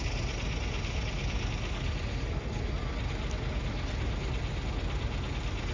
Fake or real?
real